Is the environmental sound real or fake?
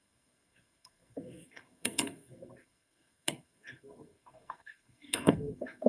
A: fake